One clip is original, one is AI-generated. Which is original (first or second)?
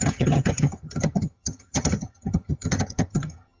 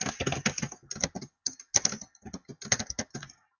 second